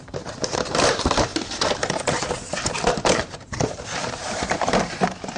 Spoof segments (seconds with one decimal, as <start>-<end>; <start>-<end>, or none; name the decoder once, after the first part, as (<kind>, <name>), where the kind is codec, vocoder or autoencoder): 0.0-5.4 (vocoder, BigVGAN v2)